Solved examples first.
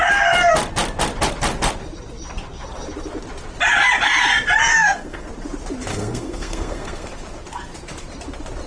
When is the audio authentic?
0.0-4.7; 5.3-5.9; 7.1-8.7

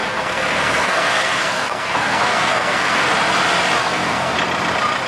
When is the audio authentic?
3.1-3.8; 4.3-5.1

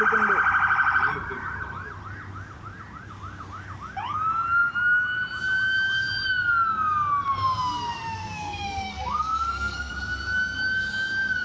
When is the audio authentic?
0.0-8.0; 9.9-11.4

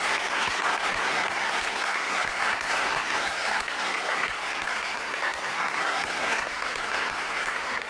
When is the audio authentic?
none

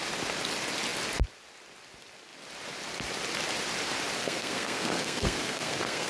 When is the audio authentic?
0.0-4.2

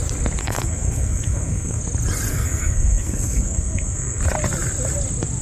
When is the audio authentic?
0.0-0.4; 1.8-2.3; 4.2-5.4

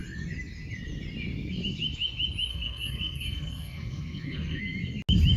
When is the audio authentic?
0.0-2.5; 4.6-5.4